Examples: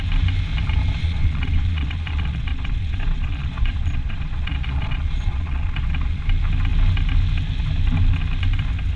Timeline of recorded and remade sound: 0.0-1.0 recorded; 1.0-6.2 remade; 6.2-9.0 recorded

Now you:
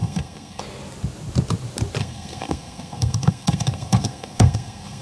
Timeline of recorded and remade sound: 0.0-0.6 remade; 0.6-2.0 recorded; 2.0-5.0 remade

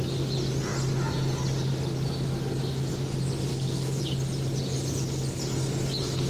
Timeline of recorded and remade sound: 0.0-3.5 recorded; 3.5-4.0 remade; 4.0-6.3 recorded

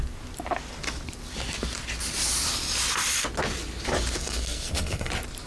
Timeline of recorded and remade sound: 0.0-4.2 recorded; 4.2-5.1 remade; 5.1-5.5 recorded

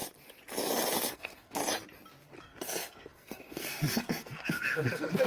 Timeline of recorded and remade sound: 0.0-1.1 recorded; 1.1-1.6 remade; 1.6-2.4 recorded; 2.4-5.3 remade

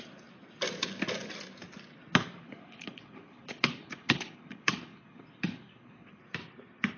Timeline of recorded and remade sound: 0.0-2.4 recorded; 2.4-6.2 remade; 6.2-7.0 recorded